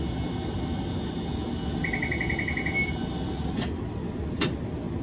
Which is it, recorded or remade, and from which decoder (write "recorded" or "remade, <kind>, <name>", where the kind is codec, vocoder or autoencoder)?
recorded